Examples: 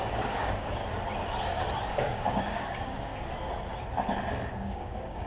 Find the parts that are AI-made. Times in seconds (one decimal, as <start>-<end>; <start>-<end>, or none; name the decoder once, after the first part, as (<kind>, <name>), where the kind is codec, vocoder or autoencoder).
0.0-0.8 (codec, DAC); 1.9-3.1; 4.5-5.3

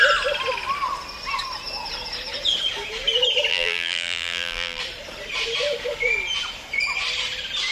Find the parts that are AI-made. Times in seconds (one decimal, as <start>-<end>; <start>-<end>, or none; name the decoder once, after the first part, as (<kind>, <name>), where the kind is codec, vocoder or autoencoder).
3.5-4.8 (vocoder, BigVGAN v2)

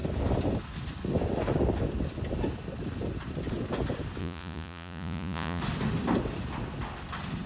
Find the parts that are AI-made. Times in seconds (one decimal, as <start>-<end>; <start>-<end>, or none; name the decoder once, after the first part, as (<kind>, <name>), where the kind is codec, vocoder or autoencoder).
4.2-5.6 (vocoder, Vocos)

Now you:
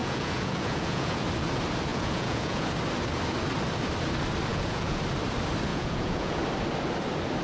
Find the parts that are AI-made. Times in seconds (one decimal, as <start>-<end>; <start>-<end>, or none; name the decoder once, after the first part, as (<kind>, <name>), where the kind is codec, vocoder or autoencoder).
0.0-1.2 (vocoder, Vocos); 1.9-2.7; 4.5-5.0; 5.7-6.4

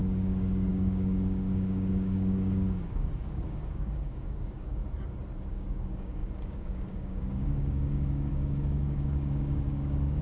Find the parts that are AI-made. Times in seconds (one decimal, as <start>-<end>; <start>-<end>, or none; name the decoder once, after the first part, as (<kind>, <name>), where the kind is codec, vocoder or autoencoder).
0.0-4.8 (codec, DAC); 5.5-10.2